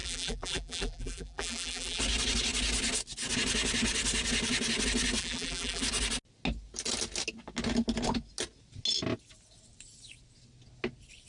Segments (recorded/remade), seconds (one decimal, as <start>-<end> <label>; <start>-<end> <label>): 0.0-2.0 remade; 2.0-5.2 recorded; 5.2-5.8 remade; 5.8-11.3 recorded

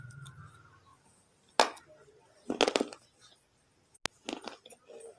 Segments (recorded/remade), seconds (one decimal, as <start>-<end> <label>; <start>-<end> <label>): 0.0-5.2 recorded

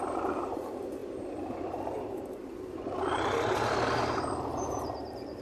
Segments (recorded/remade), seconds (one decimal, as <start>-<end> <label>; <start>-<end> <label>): 0.0-5.4 remade

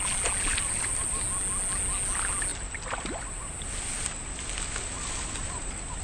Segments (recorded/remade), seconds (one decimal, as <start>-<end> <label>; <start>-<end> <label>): 0.0-0.5 recorded; 0.5-1.2 remade; 1.2-6.0 recorded